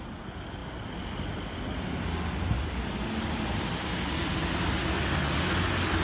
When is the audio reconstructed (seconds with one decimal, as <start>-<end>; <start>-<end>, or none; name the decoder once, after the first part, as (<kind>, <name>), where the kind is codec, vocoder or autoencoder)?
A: none